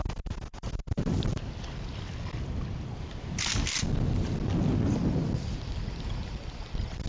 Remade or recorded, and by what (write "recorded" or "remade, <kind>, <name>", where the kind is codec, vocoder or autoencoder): recorded